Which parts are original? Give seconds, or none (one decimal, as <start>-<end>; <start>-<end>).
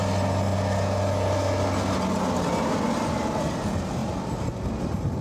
0.0-5.2